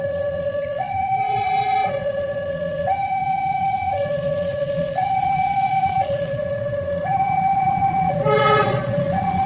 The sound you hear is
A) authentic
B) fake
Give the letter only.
B